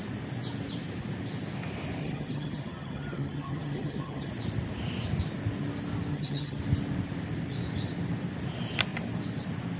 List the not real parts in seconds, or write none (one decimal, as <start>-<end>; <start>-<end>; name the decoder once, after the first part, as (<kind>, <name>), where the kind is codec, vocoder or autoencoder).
2.0-4.3 (vocoder, HiFi-GAN); 6.1-6.6